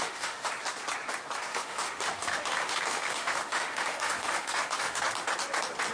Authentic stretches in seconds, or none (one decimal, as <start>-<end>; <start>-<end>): 0.5-1.5; 5.0-5.9